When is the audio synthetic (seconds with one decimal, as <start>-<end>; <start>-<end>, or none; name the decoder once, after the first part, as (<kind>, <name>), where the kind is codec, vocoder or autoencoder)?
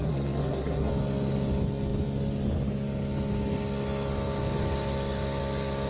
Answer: 0.0-0.9 (codec, SNAC)